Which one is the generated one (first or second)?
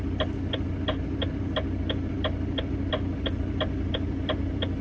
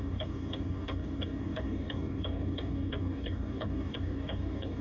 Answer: second